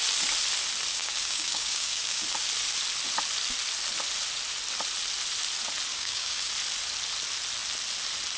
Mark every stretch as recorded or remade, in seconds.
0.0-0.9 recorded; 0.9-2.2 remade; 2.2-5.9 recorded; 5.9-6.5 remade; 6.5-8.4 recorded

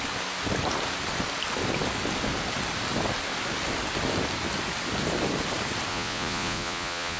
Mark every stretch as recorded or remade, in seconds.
0.0-5.9 recorded; 5.9-7.2 remade

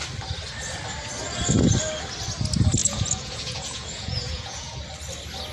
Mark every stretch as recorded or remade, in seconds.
0.0-2.8 recorded; 2.8-4.8 remade; 4.8-5.5 recorded

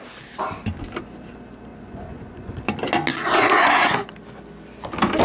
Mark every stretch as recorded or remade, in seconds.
0.0-1.7 recorded; 1.7-2.6 remade; 2.6-3.2 recorded; 3.2-4.1 remade; 4.1-5.2 recorded